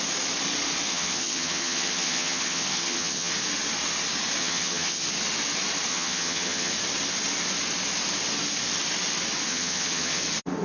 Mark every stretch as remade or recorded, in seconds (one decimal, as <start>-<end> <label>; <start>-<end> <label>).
0.0-0.9 recorded; 0.9-3.3 remade; 3.3-4.4 recorded; 4.4-5.0 remade; 5.0-5.9 recorded; 5.9-6.7 remade; 6.7-9.5 recorded; 9.5-10.2 remade; 10.2-10.6 recorded